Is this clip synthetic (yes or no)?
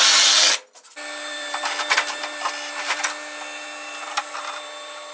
no